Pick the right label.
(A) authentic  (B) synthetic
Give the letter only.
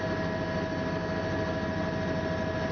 A